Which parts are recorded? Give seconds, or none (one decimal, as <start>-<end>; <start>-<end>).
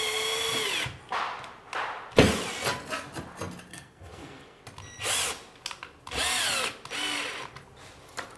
0.0-3.7; 4.6-8.4